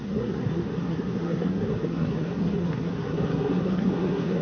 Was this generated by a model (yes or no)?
yes